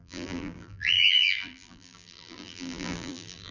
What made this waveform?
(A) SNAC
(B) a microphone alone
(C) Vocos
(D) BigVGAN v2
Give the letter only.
D